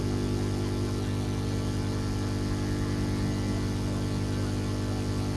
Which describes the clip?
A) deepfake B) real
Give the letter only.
B